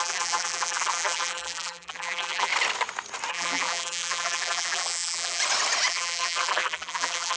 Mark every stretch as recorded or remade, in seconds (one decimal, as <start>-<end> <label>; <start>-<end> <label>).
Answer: 0.0-2.5 remade; 2.5-3.3 recorded; 3.3-5.4 remade; 5.4-5.9 recorded; 5.9-7.4 remade